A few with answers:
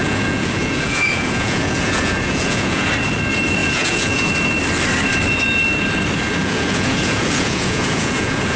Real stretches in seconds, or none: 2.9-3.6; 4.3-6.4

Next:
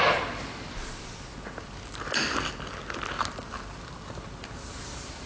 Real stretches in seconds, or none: 0.0-5.3

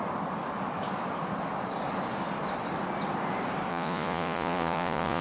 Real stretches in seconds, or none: 0.0-3.7